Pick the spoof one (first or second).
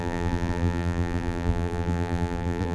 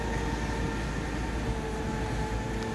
first